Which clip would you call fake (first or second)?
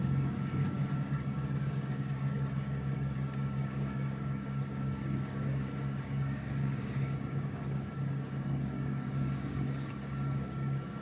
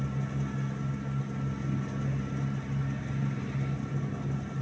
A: first